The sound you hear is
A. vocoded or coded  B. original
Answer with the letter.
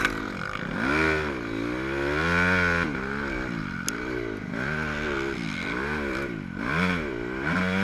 B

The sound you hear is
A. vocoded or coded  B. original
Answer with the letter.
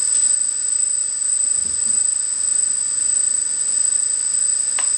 B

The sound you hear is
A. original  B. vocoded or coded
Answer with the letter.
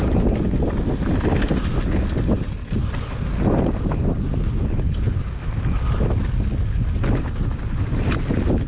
A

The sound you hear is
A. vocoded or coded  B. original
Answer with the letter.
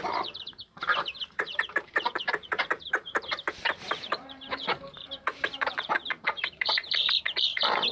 A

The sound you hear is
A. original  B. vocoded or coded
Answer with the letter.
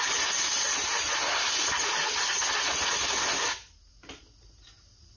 A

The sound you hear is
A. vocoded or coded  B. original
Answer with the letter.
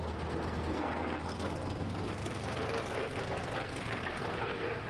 A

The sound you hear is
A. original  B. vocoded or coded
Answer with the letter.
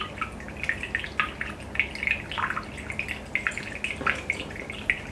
A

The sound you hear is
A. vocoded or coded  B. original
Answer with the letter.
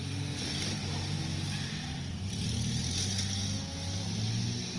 B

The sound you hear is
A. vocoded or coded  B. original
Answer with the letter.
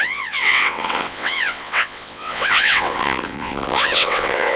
A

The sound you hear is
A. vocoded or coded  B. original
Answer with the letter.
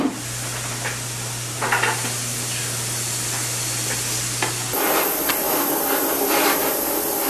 B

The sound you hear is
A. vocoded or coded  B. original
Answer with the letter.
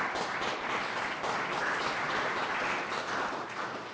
B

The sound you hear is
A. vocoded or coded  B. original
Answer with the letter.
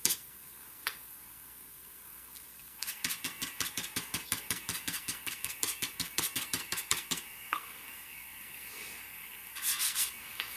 A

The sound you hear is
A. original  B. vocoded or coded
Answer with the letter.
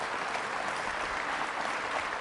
A